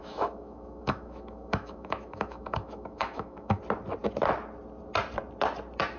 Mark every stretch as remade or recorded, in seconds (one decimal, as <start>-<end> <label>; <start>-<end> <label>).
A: 0.0-3.6 remade; 3.6-6.0 recorded